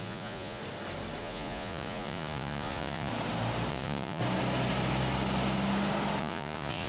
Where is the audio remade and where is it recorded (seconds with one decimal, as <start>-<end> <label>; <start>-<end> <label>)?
0.0-0.6 remade; 0.6-1.2 recorded; 1.2-3.1 remade; 3.1-3.7 recorded; 3.7-4.2 remade; 4.2-6.2 recorded; 6.2-6.9 remade